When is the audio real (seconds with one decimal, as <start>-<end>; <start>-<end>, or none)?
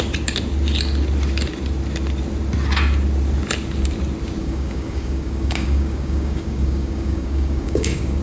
0.0-4.4